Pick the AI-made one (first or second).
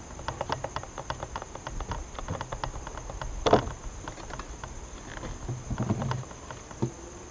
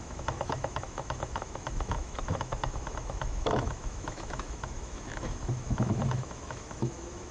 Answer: second